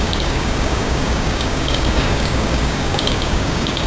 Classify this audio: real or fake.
fake